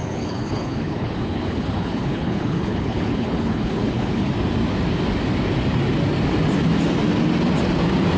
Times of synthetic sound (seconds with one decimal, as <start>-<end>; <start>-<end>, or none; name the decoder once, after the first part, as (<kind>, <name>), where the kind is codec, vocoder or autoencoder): 0.0-4.3 (codec, HILCodec)